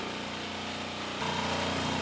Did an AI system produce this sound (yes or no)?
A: no